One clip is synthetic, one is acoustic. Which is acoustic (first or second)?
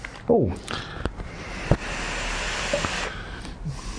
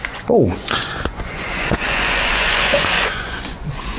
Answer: first